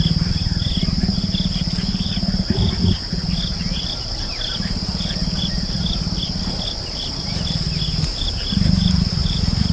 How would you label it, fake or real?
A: fake